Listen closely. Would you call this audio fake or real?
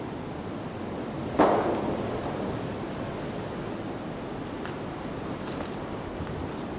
real